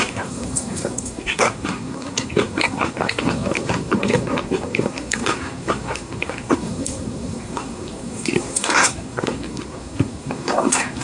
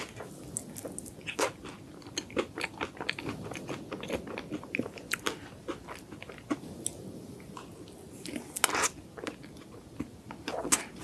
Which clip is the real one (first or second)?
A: second